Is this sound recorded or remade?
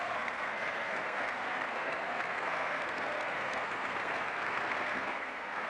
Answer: remade